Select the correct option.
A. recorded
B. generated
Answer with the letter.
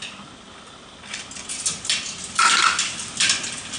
A